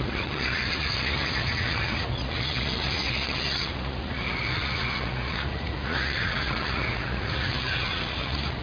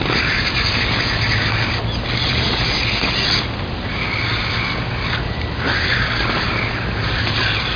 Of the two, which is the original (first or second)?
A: second